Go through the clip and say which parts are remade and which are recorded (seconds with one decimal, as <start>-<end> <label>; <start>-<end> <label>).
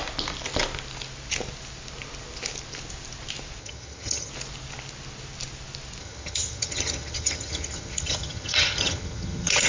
0.0-3.6 recorded; 3.6-4.3 remade; 4.3-6.0 recorded; 6.0-9.7 remade